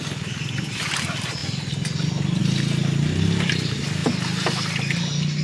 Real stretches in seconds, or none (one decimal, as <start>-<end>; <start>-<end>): 0.0-5.4